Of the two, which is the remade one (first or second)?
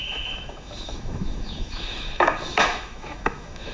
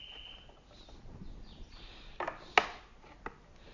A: first